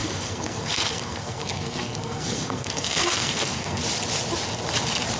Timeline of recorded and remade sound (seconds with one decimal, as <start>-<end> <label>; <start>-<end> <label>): 0.0-3.8 remade; 3.8-5.2 recorded